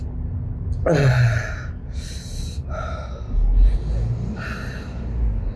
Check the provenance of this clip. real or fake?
real